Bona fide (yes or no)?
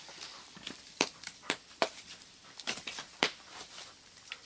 no